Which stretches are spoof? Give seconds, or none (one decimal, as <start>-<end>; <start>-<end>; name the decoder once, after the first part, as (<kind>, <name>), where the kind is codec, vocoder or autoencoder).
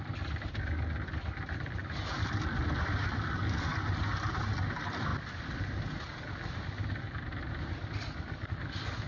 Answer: none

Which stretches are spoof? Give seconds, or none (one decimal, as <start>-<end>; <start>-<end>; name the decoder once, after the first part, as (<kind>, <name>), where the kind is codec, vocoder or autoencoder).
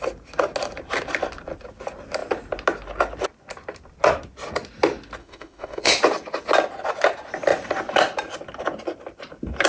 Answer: 5.2-5.9 (autoencoder, DAC-VAE)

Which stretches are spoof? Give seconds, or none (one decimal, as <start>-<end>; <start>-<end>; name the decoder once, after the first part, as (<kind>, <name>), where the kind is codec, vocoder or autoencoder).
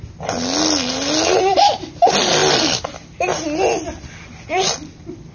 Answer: none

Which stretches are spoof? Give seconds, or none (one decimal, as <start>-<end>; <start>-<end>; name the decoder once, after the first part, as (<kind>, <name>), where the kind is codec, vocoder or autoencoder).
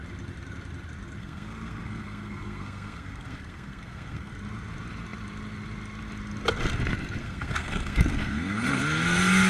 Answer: 1.2-4.3 (codec, SNAC); 7.2-8.8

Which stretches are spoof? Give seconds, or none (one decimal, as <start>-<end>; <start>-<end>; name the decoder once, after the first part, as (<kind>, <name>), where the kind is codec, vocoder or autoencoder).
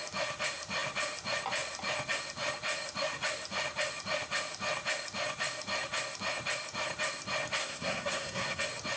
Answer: 7.6-8.6 (codec, SNAC)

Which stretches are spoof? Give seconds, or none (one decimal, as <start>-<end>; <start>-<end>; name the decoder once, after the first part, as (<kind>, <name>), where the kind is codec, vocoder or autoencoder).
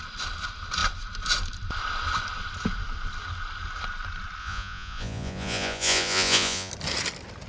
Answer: 4.4-6.7 (vocoder, Vocos)